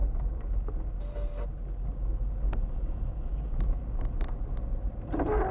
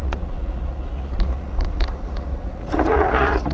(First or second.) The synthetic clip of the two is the second